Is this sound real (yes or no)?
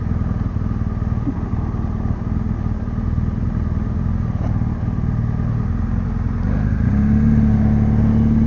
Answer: yes